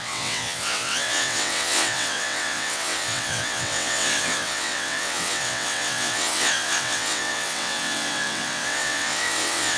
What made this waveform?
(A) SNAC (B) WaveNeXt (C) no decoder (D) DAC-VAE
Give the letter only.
B